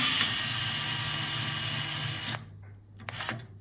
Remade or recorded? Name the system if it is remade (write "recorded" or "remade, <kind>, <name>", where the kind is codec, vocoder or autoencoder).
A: recorded